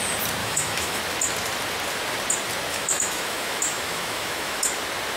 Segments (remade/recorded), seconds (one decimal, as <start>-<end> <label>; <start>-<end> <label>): 0.0-0.4 recorded; 0.4-1.0 remade; 1.0-2.7 recorded; 2.7-4.6 remade; 4.6-5.2 recorded